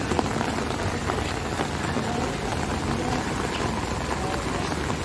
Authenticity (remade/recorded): recorded